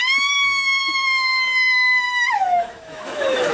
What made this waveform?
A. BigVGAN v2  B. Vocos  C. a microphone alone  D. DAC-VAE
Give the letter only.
D